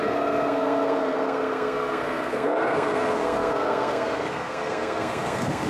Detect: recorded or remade remade